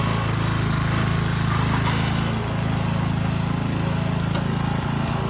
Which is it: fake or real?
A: real